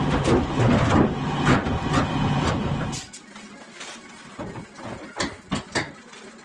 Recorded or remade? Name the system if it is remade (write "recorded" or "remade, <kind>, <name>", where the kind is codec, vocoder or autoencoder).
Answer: recorded